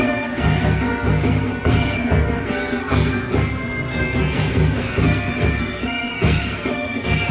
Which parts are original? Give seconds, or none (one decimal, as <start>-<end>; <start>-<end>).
none